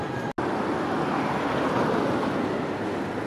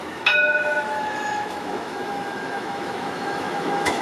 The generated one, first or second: second